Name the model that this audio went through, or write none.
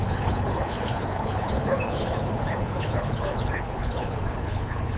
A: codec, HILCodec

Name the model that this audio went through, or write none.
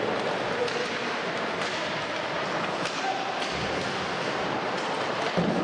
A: vocoder, BigVGAN v2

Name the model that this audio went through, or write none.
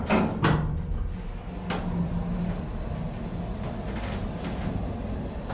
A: none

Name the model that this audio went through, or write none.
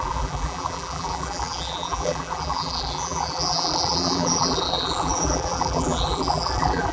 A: vocoder, BigVGAN v2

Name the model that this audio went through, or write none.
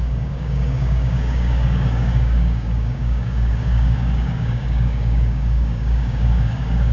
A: codec, DAC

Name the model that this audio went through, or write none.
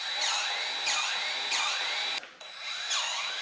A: none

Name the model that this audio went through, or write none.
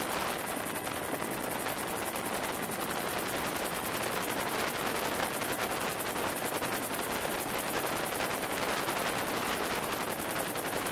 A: none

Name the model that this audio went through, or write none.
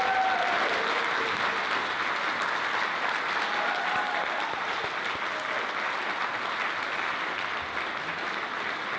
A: none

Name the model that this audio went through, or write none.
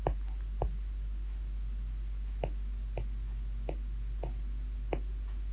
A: none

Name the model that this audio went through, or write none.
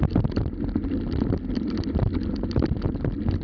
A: none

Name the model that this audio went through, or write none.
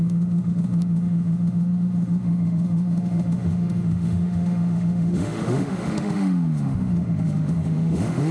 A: autoencoder, DAC-VAE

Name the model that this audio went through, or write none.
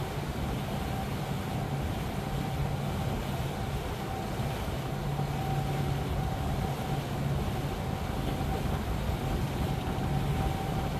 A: none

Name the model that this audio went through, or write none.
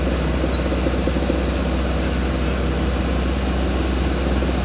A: none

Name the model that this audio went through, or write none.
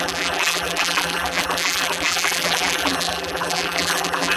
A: vocoder, BigVGAN v2